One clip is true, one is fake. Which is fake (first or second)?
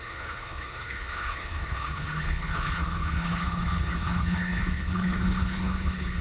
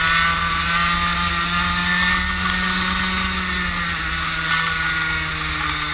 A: first